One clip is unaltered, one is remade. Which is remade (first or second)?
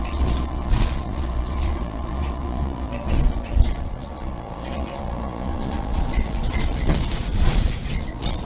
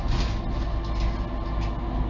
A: first